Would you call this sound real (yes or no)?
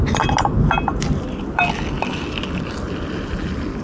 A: yes